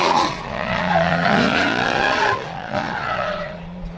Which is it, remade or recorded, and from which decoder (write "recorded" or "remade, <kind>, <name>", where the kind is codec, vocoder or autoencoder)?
remade, vocoder, Vocos